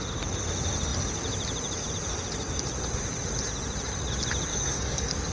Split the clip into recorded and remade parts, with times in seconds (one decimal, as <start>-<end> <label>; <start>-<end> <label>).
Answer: 0.0-4.5 recorded; 4.5-5.3 remade